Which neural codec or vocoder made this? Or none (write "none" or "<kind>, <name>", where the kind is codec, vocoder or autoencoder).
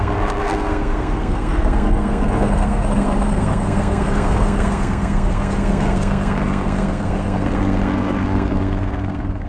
codec, SNAC